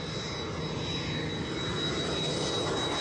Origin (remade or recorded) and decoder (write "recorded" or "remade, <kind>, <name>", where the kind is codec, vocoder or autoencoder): recorded